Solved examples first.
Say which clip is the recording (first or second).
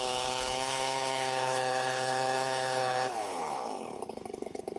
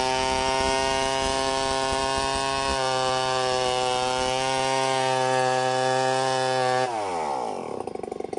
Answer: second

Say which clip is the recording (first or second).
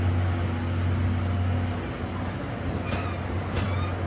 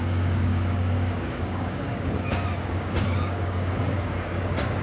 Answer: first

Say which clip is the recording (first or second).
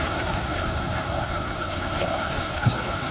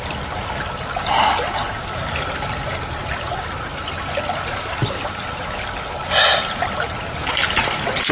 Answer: second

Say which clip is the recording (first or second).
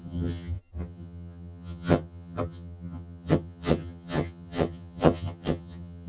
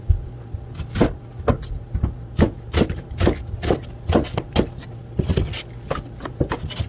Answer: second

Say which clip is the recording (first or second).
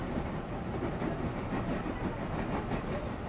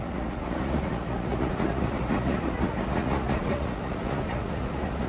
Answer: first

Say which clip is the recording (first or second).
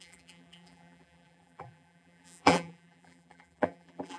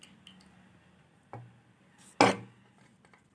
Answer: second